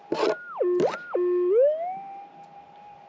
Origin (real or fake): real